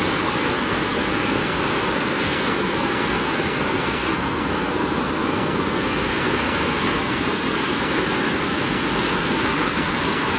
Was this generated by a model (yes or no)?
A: yes